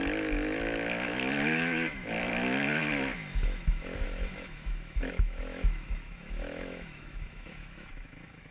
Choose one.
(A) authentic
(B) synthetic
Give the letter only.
B